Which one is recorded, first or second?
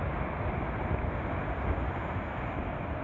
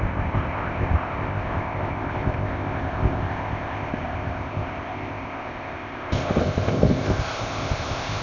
first